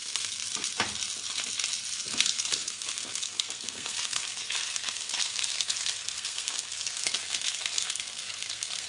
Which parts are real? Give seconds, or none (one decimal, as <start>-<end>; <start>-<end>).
0.4-2.0